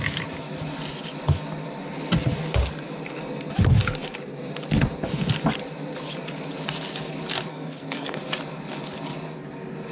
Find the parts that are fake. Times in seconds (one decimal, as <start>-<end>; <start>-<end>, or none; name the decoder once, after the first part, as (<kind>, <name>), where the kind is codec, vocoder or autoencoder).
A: 7.5-8.2 (codec, SNAC)